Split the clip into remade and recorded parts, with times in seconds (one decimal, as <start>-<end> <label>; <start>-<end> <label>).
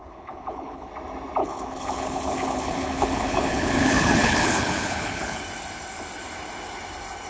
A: 0.0-0.9 remade; 0.9-1.4 recorded; 1.4-5.4 remade; 5.4-7.3 recorded